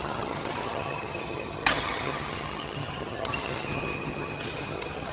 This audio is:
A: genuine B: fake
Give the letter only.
B